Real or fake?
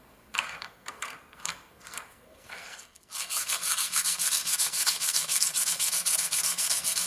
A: fake